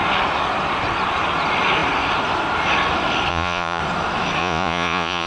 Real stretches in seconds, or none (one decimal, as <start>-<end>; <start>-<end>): 0.0-3.3; 3.8-4.4